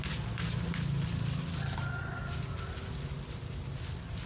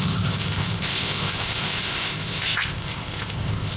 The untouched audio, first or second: first